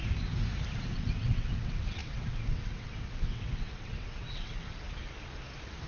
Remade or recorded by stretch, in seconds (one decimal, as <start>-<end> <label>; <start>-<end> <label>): 0.0-0.8 recorded; 0.8-4.6 remade; 4.6-5.9 recorded

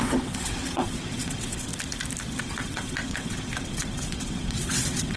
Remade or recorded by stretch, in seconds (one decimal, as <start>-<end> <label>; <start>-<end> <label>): 0.0-1.7 remade; 1.7-2.4 recorded; 2.4-5.2 remade

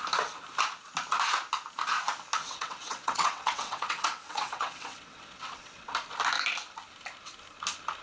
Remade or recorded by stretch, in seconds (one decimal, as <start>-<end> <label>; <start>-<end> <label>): 0.0-2.4 recorded; 2.4-5.9 remade; 5.9-8.0 recorded

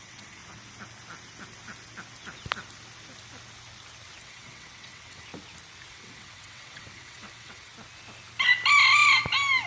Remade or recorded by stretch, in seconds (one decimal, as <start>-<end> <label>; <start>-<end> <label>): 0.0-0.4 remade; 0.4-4.2 recorded; 4.2-5.3 remade; 5.3-5.9 recorded; 5.9-7.7 remade; 7.7-9.7 recorded

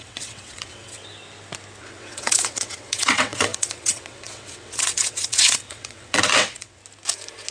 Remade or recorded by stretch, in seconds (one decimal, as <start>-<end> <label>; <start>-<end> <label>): 0.0-1.0 remade; 1.0-1.8 recorded; 1.8-6.8 remade; 6.8-7.5 recorded

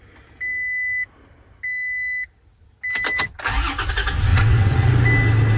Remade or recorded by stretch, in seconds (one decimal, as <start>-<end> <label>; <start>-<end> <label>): 0.0-4.3 recorded; 4.3-4.9 remade; 4.9-5.6 recorded

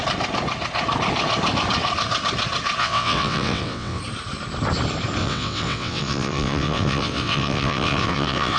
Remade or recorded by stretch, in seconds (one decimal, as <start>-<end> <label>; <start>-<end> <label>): 0.0-2.8 recorded; 2.8-4.0 remade; 4.0-5.2 recorded; 5.2-8.6 remade

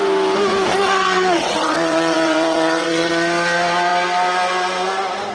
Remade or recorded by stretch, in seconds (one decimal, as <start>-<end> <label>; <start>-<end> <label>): 0.0-0.7 recorded; 0.7-3.1 remade; 3.1-5.3 recorded